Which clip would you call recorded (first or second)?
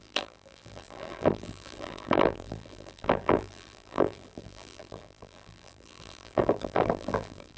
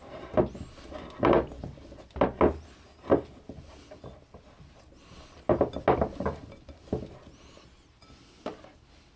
second